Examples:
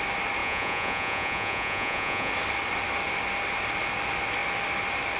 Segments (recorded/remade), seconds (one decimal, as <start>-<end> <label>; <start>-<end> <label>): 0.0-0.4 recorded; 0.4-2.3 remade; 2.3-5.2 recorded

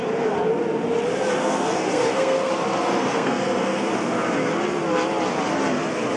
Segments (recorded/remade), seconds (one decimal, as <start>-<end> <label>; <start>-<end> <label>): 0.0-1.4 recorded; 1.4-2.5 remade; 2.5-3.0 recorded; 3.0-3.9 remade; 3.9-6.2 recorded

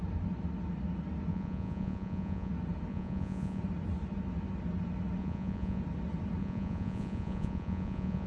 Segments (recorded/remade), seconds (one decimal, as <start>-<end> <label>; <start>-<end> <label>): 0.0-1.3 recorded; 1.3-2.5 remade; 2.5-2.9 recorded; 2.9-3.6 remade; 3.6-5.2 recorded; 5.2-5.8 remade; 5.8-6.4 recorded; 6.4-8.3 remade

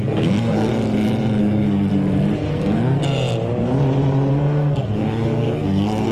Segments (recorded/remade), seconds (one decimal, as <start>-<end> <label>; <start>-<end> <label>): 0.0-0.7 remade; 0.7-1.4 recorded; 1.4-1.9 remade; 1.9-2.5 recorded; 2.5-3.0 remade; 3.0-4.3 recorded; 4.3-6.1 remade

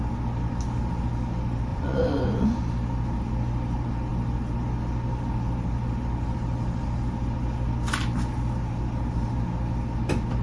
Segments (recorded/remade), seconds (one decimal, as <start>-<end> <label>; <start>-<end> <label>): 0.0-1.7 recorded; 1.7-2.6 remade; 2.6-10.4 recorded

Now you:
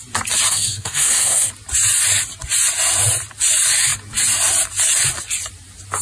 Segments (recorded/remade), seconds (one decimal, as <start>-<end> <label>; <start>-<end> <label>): 0.0-0.5 recorded; 0.5-1.5 remade; 1.5-6.0 recorded

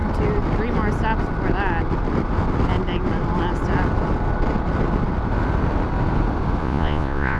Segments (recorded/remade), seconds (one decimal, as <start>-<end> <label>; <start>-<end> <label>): 0.0-6.6 recorded; 6.6-7.4 remade

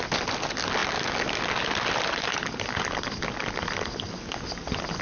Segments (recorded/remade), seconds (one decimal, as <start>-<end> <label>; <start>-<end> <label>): 0.0-5.0 recorded